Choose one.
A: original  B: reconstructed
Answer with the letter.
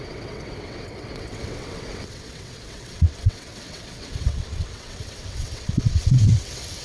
B